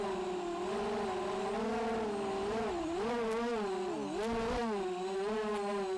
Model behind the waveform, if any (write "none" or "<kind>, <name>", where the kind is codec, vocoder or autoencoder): none